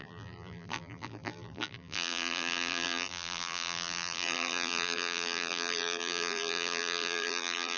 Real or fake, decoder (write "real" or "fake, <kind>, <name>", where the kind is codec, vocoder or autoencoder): fake, vocoder, BigVGAN v2